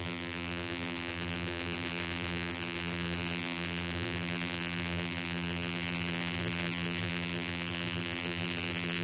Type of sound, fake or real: fake